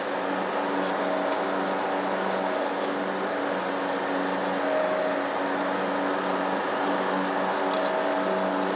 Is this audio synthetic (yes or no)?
no